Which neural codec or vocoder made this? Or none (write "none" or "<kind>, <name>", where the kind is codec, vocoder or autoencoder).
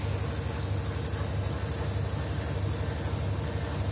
none